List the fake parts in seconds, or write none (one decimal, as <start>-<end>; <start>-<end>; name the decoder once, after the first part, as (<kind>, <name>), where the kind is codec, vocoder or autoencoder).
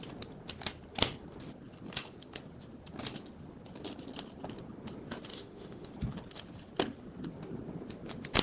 5.3-5.9 (autoencoder, DAC-VAE)